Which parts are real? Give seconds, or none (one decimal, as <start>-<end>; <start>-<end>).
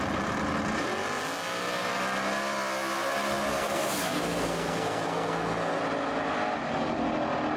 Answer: 0.0-3.5; 5.8-7.6